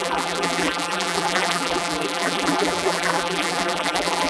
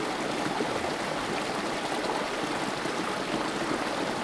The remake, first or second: first